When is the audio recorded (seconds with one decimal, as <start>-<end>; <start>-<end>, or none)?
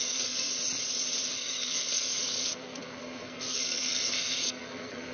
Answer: 0.5-1.3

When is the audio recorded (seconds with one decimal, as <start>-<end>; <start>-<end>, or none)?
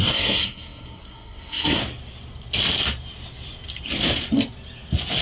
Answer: 1.8-5.2